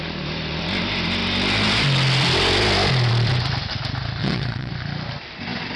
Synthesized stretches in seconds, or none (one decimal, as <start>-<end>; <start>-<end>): 4.2-4.7